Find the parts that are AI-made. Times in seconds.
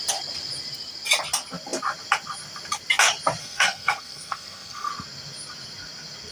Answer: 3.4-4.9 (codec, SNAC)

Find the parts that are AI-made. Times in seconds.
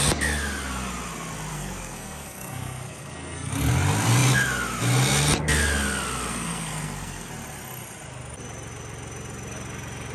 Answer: 1.5-3.5 (codec, SNAC); 6.3-7.3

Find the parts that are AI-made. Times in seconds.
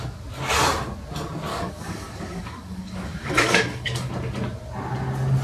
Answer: 1.5-4.1 (codec, DAC)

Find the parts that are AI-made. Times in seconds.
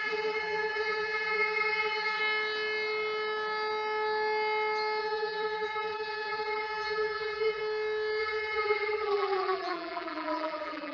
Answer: 0.0-2.2 (vocoder, BigVGAN v2); 5.0-7.6; 8.2-10.9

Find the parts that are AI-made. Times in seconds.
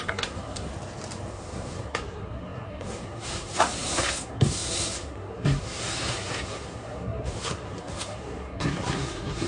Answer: 0.0-0.7 (codec, SNAC); 1.3-9.5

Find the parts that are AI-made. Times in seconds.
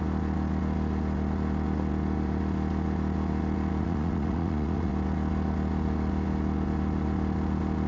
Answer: 3.8-4.9 (vocoder, Vocos)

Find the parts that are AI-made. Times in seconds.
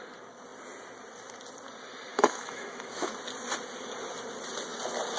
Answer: 2.1-3.1 (autoencoder, DAC-VAE)